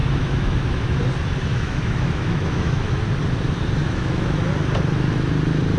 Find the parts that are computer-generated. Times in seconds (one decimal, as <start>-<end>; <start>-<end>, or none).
0.0-1.0; 1.5-3.0; 3.8-4.5